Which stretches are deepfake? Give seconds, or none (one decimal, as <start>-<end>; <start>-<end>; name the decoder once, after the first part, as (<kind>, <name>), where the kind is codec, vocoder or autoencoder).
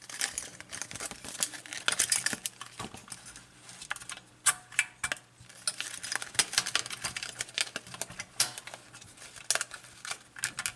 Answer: none